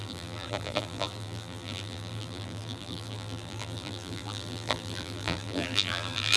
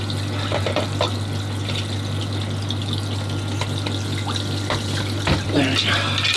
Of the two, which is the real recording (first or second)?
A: second